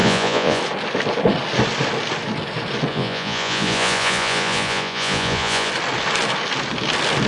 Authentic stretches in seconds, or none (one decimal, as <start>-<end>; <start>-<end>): 0.6-2.9; 5.7-7.3